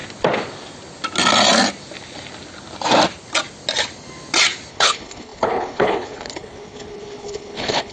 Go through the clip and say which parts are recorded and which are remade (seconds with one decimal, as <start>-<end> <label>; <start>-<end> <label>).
0.0-4.7 recorded; 4.7-7.9 remade

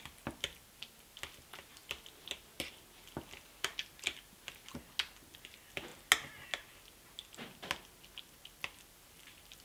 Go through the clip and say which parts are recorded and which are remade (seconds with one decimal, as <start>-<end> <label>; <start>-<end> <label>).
0.0-9.6 recorded

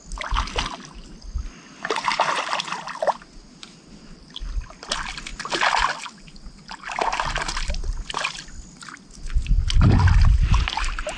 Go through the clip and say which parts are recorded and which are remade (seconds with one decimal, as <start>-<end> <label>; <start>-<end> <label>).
0.0-11.2 recorded

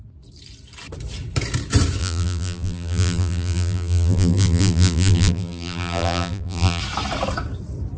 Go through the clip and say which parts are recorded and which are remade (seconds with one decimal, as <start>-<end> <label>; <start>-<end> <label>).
0.0-2.0 recorded; 2.0-6.8 remade; 6.8-8.0 recorded

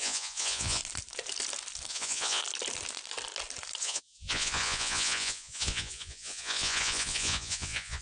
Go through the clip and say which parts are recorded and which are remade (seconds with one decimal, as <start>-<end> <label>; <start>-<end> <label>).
0.0-0.8 remade; 0.8-1.9 recorded; 1.9-2.4 remade; 2.4-3.8 recorded; 3.8-8.0 remade

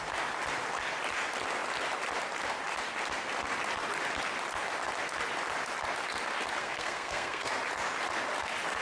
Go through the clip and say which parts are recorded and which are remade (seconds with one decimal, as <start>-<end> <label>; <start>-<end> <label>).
0.0-6.6 recorded; 6.6-7.5 remade; 7.5-8.8 recorded

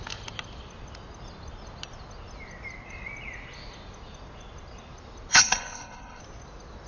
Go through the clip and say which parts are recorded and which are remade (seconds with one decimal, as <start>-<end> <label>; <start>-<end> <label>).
0.0-5.3 recorded; 5.3-6.2 remade; 6.2-6.9 recorded